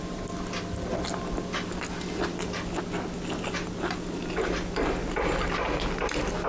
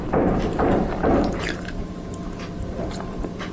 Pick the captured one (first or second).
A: first